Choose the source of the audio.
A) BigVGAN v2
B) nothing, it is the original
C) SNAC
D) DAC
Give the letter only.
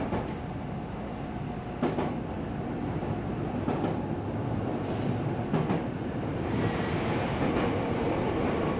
B